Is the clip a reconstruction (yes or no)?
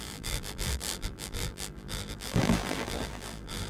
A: yes